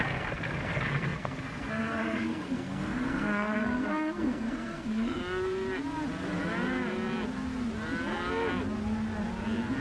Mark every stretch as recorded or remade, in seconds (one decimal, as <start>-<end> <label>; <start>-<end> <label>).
0.0-5.2 remade; 5.2-9.8 recorded